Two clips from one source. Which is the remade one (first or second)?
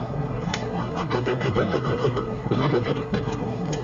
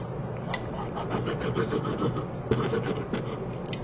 first